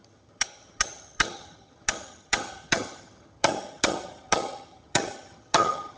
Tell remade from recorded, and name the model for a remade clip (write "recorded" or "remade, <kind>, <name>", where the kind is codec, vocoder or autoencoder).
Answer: remade, vocoder, HiFi-GAN